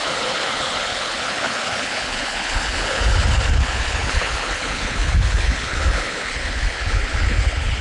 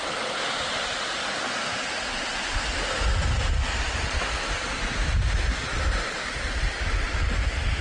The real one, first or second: second